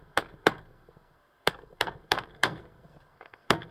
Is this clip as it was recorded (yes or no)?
no